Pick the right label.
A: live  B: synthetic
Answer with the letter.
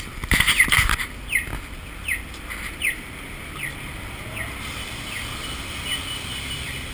B